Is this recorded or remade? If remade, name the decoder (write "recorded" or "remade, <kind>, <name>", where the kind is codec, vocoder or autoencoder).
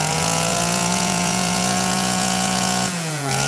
remade, vocoder, Vocos